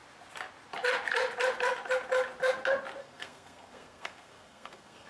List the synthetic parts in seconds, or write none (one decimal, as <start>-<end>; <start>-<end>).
3.0-5.1